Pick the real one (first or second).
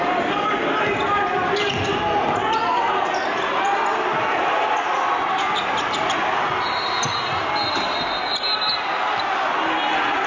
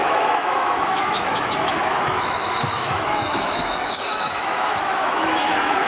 first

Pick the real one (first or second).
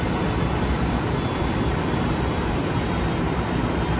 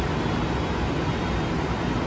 second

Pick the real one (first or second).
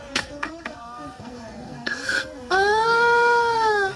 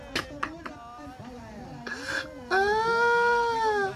second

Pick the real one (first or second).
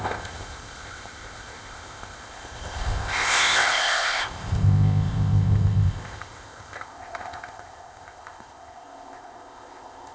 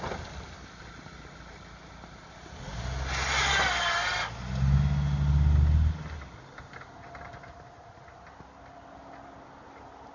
second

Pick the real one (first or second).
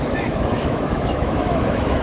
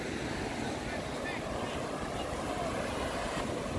second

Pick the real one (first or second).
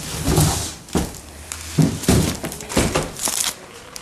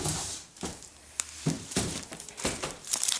first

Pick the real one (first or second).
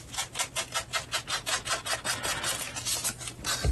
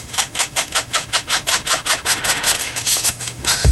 first